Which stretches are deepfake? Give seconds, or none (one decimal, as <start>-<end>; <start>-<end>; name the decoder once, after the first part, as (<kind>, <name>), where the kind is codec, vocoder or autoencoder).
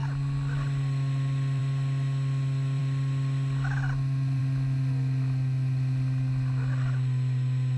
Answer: none